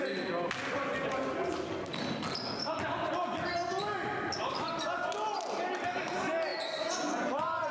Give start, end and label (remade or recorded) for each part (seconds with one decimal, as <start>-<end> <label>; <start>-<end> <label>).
0.0-7.7 recorded